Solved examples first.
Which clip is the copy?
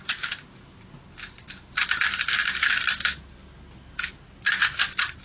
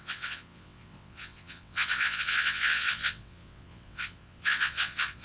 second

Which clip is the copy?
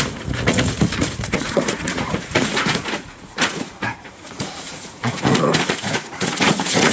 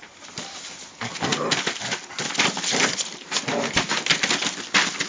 first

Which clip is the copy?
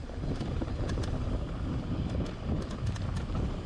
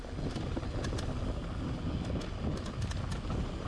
first